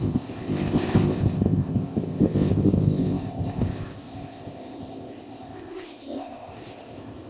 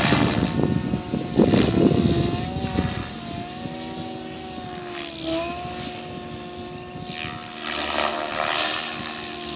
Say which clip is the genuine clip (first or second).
second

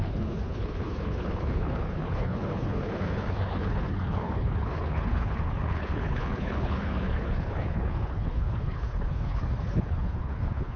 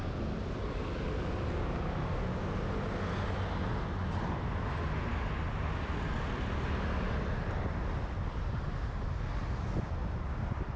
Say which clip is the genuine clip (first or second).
second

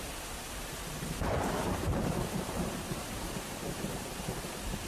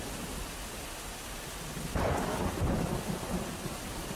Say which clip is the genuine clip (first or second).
second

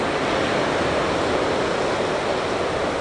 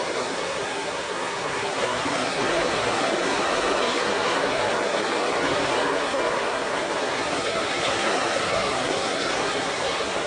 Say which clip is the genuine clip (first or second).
first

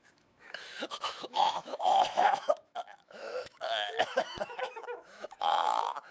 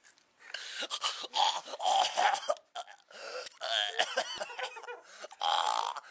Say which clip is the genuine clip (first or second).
second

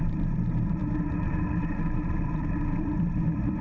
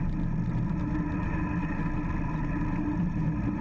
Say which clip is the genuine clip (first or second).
second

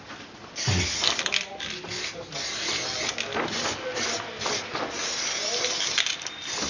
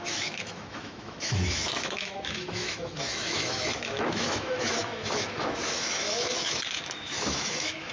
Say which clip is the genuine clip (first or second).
first